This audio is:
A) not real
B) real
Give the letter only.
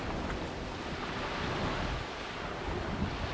B